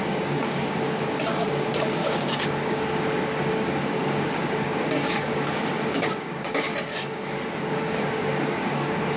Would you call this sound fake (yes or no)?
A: yes